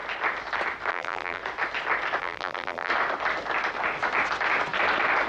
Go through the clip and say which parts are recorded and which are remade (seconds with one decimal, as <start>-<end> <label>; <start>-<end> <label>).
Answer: 0.0-0.9 recorded; 0.9-1.4 remade; 1.4-2.2 recorded; 2.2-2.9 remade; 2.9-5.3 recorded